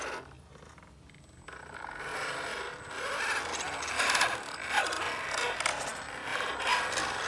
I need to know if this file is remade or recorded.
recorded